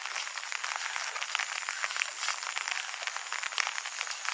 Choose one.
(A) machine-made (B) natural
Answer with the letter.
B